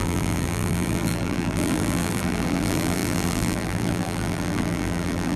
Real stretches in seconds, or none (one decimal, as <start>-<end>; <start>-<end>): none